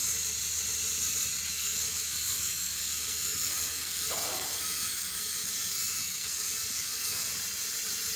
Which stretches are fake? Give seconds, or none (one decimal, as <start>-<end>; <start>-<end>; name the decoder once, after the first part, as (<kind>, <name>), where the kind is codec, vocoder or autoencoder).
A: 1.5-7.3 (codec, SNAC)

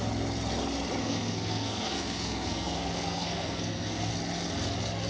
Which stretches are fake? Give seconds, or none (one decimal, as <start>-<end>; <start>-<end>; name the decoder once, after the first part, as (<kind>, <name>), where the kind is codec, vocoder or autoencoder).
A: 1.0-4.1 (codec, SNAC)

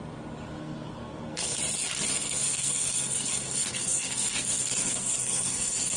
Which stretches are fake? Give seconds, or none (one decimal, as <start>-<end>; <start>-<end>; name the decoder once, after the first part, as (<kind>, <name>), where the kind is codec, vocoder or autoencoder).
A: 0.6-1.6 (codec, SNAC); 2.1-6.0

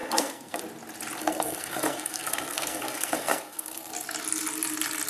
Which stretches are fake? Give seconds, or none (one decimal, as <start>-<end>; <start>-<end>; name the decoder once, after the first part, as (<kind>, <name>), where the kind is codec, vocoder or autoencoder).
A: 0.0-0.6 (codec, SNAC); 1.2-3.9

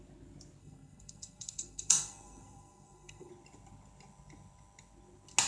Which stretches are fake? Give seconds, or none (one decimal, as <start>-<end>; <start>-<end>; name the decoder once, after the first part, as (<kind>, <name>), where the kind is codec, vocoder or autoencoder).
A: 0.6-3.3 (codec, SNAC)